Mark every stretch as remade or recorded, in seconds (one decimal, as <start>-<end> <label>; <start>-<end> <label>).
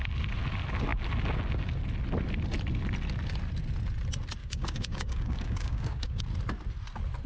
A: 0.0-4.4 recorded; 4.4-6.2 remade; 6.2-7.3 recorded